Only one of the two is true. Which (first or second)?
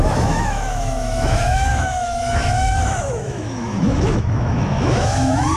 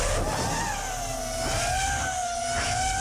second